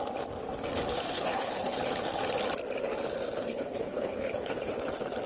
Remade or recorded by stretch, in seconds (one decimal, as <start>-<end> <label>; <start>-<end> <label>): 0.0-0.9 recorded; 0.9-1.9 remade; 1.9-3.4 recorded; 3.4-4.8 remade; 4.8-5.3 recorded